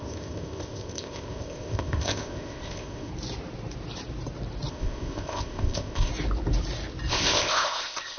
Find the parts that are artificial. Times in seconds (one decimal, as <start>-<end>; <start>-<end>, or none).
0.0-3.1; 4.7-6.1; 7.1-8.2